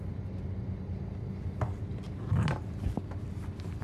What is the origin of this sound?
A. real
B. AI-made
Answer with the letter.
A